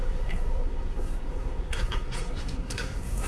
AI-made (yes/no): yes